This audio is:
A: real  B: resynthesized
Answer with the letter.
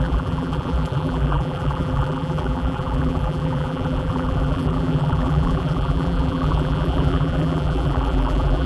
B